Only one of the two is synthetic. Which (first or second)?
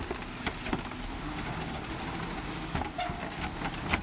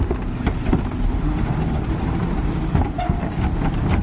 second